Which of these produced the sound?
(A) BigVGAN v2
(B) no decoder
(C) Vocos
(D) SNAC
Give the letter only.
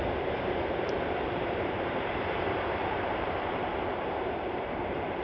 A